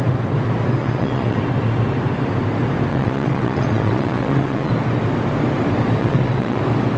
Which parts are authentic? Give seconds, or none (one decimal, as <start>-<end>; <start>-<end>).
0.0-0.8; 1.4-2.9; 4.7-6.0; 6.6-7.0